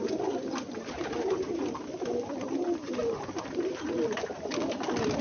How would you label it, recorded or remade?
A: recorded